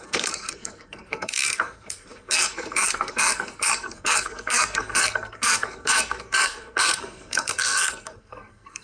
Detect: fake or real fake